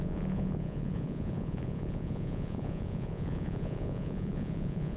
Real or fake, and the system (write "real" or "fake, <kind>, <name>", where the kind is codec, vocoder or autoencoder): fake, vocoder, Vocos